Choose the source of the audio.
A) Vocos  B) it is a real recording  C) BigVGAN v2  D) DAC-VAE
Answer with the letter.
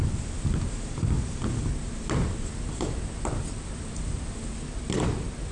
B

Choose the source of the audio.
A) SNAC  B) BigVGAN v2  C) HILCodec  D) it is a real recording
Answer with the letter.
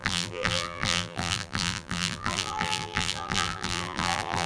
B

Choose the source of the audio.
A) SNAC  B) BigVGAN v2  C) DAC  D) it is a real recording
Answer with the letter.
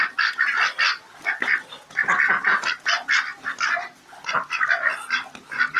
D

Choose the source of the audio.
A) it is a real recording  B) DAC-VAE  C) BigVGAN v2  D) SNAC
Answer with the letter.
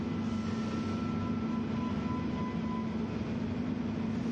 A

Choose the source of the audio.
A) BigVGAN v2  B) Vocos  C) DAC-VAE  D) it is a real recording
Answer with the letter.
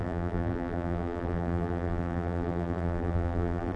A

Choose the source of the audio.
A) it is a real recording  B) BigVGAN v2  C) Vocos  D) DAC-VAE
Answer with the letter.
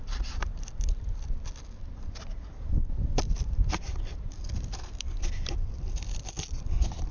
B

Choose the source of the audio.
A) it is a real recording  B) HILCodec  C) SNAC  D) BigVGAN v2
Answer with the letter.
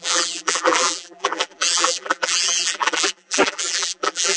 D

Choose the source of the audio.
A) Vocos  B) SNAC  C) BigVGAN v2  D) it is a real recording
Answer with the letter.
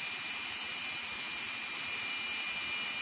C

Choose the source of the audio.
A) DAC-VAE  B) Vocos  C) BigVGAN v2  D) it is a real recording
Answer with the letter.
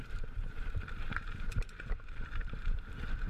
C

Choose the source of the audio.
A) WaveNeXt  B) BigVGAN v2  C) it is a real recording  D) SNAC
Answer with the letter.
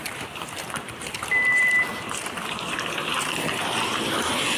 B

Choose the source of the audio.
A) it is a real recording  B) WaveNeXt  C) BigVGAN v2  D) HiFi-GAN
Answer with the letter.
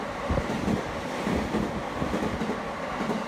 A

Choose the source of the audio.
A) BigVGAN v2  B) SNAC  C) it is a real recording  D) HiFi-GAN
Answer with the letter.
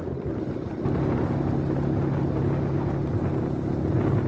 C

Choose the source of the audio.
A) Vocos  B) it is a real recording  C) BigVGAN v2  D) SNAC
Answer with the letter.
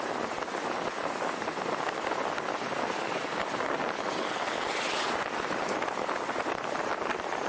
B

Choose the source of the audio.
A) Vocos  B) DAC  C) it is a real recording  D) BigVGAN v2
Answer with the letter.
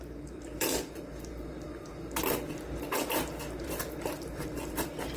D